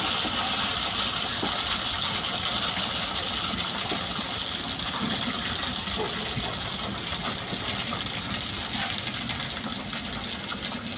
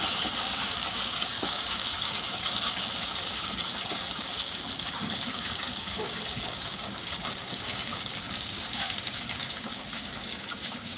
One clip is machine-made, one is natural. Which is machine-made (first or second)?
second